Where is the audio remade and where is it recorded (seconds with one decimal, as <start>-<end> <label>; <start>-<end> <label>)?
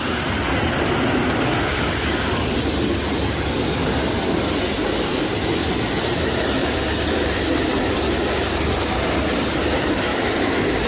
0.0-6.6 recorded; 6.6-7.2 remade; 7.2-10.1 recorded; 10.1-10.9 remade